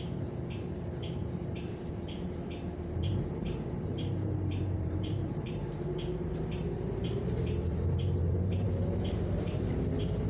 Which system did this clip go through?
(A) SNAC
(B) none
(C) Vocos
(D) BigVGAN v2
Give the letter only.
D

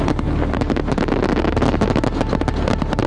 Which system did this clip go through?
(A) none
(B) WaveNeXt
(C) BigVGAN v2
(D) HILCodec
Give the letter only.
A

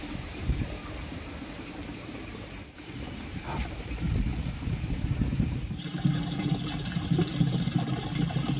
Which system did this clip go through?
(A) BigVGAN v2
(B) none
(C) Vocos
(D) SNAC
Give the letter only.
A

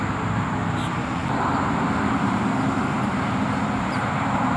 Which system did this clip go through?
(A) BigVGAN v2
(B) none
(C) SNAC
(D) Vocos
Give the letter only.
B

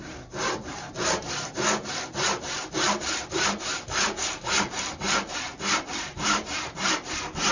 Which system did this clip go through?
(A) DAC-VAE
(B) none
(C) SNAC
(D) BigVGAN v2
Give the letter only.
D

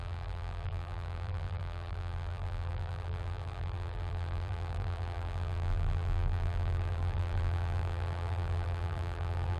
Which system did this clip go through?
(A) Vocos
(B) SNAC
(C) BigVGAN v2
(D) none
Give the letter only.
C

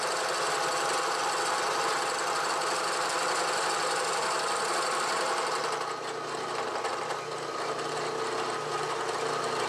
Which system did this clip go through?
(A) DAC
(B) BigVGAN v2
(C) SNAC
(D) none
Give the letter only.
D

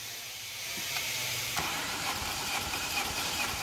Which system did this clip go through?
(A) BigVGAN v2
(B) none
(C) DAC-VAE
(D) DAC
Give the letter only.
A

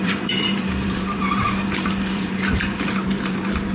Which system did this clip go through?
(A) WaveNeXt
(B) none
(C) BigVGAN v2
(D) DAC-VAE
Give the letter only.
C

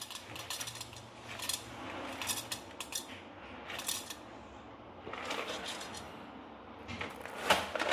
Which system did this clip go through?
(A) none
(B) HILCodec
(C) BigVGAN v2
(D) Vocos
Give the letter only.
A